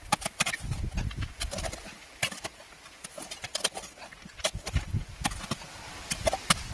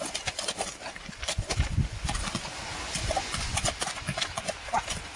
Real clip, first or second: first